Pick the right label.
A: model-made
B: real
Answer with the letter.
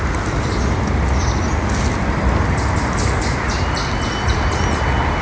B